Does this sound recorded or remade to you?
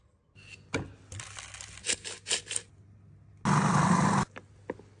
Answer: recorded